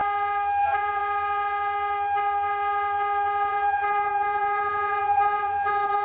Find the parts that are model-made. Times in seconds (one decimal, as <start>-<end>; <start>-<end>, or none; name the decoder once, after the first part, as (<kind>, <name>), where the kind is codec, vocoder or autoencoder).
0.6-1.0 (vocoder, Vocos); 3.5-6.0